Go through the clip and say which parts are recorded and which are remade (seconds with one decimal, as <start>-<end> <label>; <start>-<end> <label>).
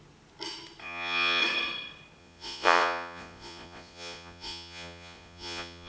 0.0-0.8 recorded; 0.8-1.4 remade; 1.4-2.2 recorded; 2.2-5.9 remade